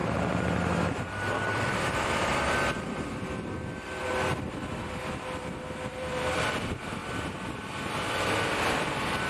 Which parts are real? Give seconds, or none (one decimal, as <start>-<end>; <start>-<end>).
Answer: 0.0-1.7; 4.1-4.7; 7.0-7.9